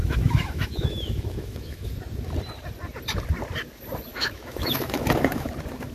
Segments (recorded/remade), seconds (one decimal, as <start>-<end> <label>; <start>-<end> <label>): 0.0-1.9 remade; 1.9-4.1 recorded; 4.1-5.5 remade; 5.5-5.9 recorded